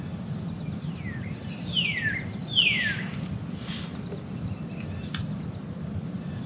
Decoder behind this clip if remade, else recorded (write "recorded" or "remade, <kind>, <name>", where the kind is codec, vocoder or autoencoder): recorded